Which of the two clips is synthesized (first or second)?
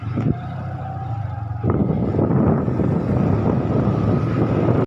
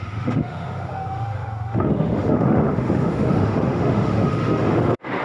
second